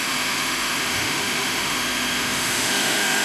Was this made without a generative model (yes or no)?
no